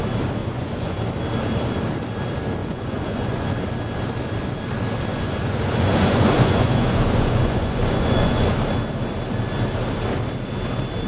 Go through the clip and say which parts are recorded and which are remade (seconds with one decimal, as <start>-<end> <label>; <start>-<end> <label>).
0.0-0.4 recorded; 0.4-1.0 remade; 1.0-2.6 recorded; 2.6-3.5 remade; 3.5-5.1 recorded; 5.1-8.5 remade; 8.5-11.1 recorded